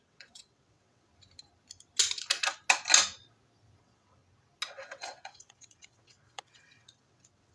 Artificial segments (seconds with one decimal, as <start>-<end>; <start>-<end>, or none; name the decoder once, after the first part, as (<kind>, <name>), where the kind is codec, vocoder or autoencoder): 0.0-1.1 (vocoder, WaveNeXt); 3.8-4.2; 4.7-7.5